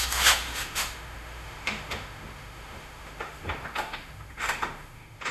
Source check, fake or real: fake